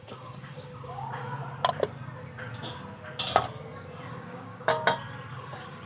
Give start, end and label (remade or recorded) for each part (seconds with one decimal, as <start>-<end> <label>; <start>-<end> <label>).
0.0-1.4 remade; 1.4-4.1 recorded; 4.1-4.7 remade; 4.7-5.3 recorded; 5.3-5.9 remade